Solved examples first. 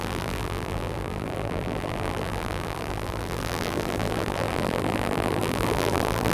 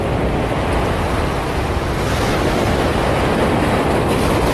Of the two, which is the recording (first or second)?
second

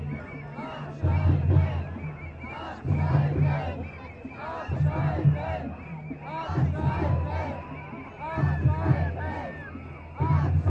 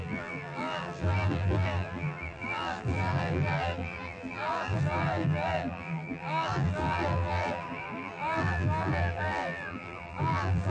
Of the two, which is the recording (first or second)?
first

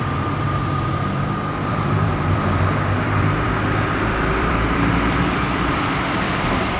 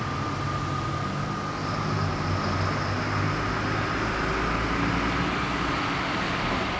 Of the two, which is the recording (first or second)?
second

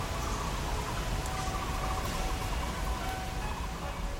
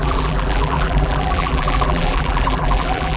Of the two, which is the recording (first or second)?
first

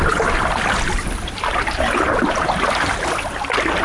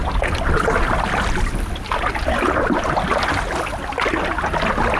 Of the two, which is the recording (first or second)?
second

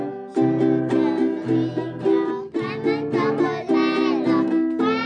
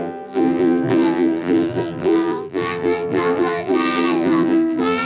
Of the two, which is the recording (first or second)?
first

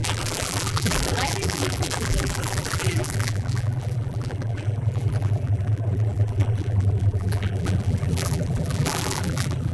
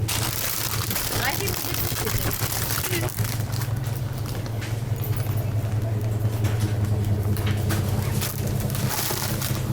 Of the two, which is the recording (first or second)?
second